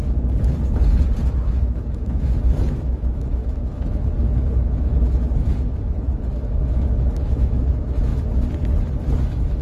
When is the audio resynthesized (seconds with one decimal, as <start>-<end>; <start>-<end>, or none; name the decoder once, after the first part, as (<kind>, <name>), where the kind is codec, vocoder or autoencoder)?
1.3-8.1 (autoencoder, DAC-VAE); 9.2-9.6